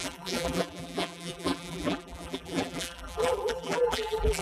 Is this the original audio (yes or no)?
no